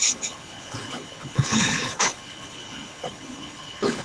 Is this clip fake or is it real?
fake